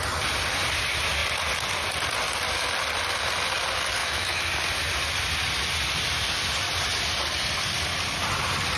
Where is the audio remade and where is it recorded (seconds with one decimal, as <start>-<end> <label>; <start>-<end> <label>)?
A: 0.0-4.0 recorded; 4.0-4.5 remade; 4.5-8.8 recorded